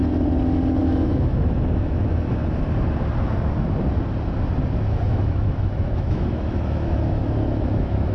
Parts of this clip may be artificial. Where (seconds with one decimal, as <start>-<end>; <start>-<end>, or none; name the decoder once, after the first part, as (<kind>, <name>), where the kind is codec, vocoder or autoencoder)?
0.8-2.4 (autoencoder, DAC-VAE); 5.0-8.1